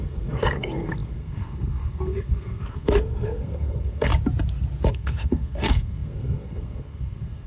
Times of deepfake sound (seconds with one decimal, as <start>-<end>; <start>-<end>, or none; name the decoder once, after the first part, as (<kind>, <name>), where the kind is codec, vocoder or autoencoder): 0.0-4.1 (codec, SNAC); 4.9-7.5